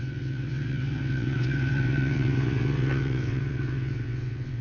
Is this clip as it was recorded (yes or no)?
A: no